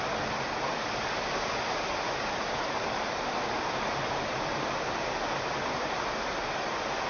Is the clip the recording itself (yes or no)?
yes